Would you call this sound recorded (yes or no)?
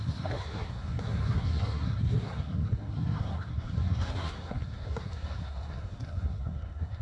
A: no